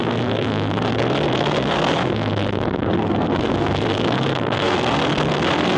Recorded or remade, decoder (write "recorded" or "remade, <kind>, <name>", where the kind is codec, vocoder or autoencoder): remade, codec, SNAC